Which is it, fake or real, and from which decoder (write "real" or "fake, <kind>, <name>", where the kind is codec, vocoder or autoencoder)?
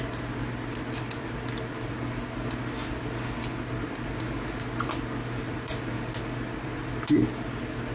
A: real